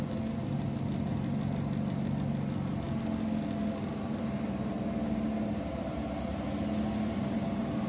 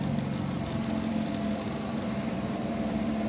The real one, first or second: first